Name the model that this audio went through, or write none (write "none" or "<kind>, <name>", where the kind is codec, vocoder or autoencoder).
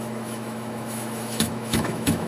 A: autoencoder, DAC-VAE